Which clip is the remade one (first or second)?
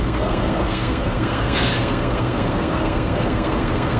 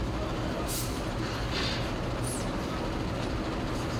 first